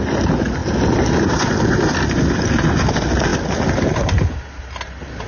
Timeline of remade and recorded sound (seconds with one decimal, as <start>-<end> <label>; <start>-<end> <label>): 0.0-5.3 recorded